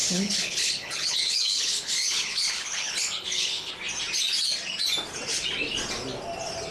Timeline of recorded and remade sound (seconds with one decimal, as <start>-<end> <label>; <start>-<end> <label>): 0.0-3.7 remade; 3.7-6.7 recorded